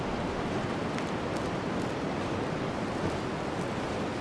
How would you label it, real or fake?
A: real